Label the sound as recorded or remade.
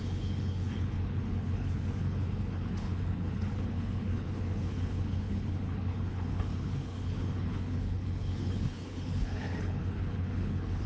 remade